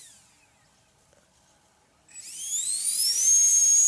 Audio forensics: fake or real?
real